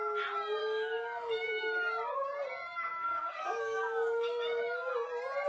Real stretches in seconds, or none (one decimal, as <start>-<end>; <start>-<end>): 0.0-0.6; 1.5-2.9; 4.9-5.5